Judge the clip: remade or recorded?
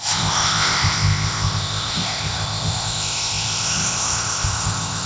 remade